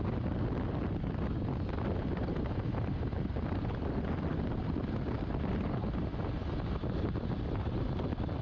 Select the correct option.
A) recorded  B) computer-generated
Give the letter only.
A